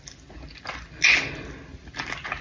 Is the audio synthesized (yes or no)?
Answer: no